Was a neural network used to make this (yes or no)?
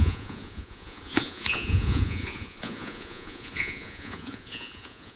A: yes